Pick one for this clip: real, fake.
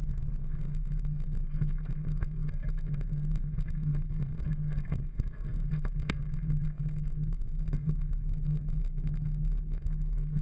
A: fake